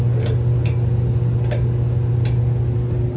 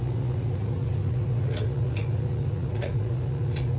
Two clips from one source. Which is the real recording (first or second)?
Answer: first